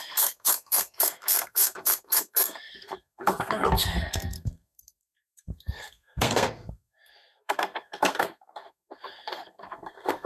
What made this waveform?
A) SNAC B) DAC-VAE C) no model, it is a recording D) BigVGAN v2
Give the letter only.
A